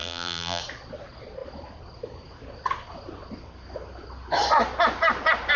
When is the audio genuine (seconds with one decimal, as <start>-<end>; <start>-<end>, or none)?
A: 0.6-5.6